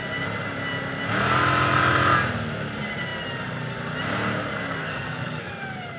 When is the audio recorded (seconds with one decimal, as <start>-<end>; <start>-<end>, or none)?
0.0-4.8; 5.5-6.0